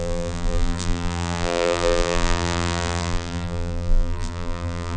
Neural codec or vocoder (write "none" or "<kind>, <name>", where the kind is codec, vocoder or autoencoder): vocoder, BigVGAN v2